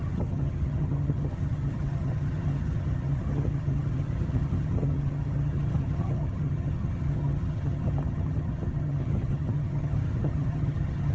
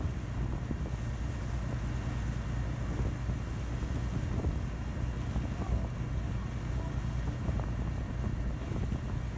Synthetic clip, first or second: first